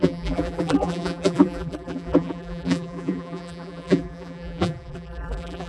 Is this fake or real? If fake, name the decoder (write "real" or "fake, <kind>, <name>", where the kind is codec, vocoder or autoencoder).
fake, vocoder, BigVGAN v2